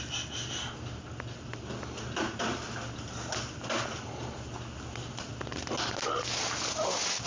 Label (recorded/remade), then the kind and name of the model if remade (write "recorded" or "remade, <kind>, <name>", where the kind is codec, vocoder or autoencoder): recorded